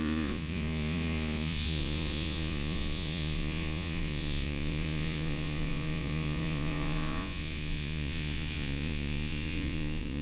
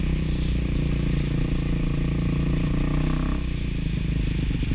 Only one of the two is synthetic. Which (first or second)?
first